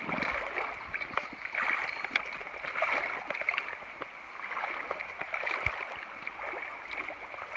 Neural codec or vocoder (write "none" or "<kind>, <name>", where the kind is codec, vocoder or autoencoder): none